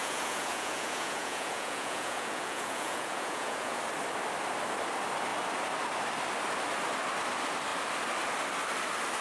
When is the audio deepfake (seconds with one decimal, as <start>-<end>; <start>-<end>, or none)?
0.0-3.8